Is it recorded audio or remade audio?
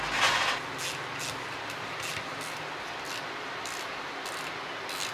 recorded